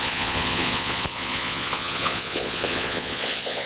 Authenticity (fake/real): fake